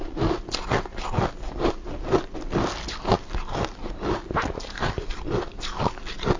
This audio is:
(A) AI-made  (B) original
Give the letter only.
B